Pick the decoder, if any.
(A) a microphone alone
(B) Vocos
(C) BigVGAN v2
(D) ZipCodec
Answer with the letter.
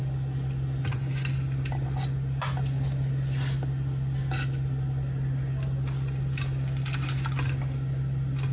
A